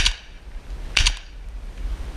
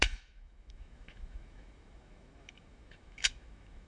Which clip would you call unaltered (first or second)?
first